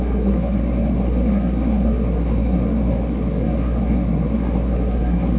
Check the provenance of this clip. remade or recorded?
remade